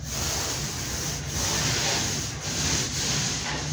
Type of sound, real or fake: real